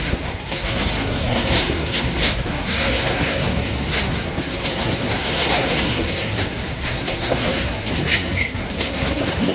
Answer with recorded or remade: remade